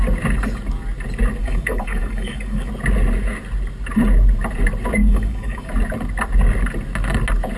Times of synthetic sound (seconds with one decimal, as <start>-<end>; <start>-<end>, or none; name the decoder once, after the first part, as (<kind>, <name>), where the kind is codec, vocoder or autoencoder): 1.4-2.7 (codec, DAC); 5.0-5.7